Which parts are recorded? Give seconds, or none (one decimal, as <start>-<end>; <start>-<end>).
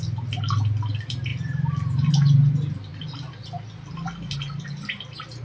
0.0-5.4